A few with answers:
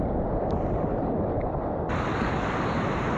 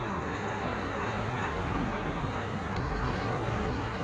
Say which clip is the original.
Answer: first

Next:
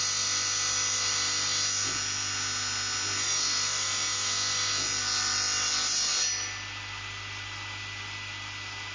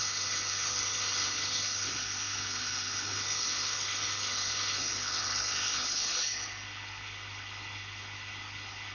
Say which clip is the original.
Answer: first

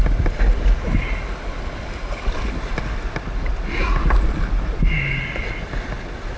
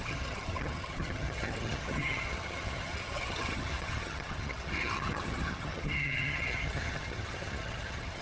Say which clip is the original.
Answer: first